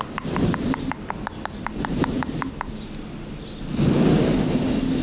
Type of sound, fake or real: real